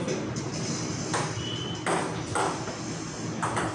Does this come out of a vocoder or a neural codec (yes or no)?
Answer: no